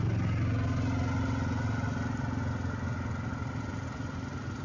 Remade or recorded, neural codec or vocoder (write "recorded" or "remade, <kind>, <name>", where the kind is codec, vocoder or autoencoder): recorded